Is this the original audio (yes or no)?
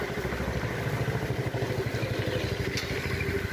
yes